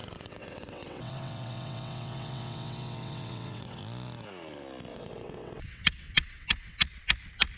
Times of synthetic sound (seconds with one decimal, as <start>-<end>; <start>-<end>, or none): 0.0-3.8; 4.9-7.0